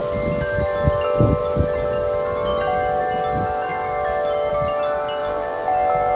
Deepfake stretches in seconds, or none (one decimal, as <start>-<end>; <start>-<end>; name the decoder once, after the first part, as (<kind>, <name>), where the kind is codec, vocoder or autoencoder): 5.2-6.2 (vocoder, BigVGAN v2)